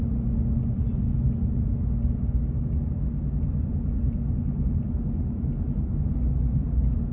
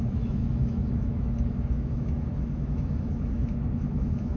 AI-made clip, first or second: second